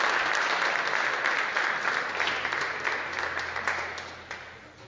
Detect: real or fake real